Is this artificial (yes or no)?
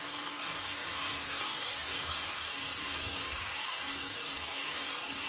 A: yes